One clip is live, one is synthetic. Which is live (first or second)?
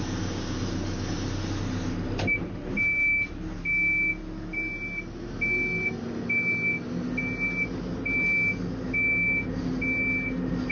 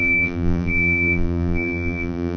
first